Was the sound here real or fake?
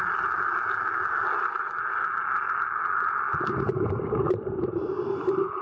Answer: real